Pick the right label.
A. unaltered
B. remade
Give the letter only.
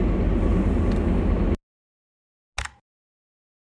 A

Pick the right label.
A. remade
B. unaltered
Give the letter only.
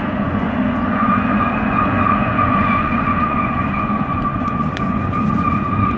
A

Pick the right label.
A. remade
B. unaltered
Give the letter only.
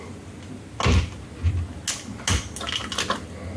B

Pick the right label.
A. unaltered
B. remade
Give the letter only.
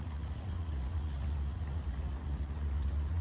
B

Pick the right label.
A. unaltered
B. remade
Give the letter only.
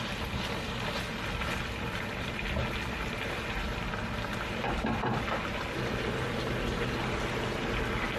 A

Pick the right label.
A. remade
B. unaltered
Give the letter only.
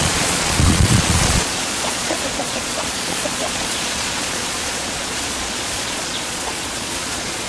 A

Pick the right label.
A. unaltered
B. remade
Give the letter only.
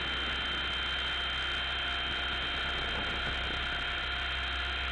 A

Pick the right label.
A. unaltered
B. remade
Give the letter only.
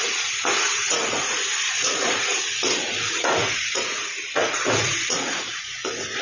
B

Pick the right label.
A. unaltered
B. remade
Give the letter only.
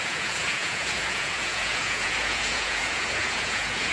B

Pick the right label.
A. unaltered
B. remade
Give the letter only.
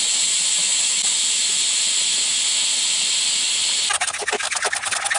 A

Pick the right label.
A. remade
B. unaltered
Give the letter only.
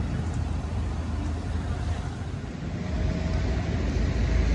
B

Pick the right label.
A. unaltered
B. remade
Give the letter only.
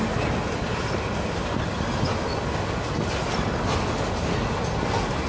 A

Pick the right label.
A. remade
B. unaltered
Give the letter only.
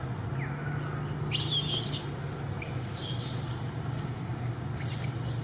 B